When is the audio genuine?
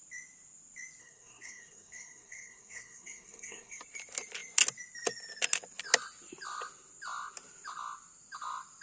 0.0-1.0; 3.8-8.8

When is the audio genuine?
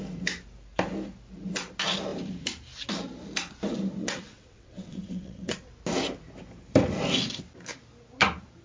0.0-4.0; 5.7-8.6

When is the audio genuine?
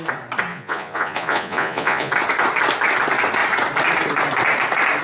0.0-0.5; 2.1-5.0